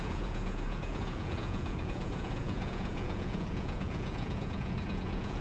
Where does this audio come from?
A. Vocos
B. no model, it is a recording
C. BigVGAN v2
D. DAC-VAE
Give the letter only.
A